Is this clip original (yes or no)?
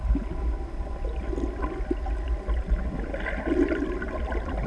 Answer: yes